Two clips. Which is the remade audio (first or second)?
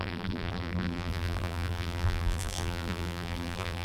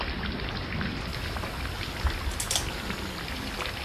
first